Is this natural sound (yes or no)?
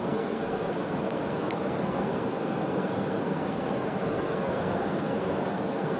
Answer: no